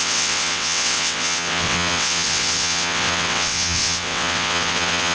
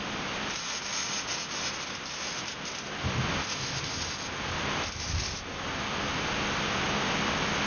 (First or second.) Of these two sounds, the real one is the second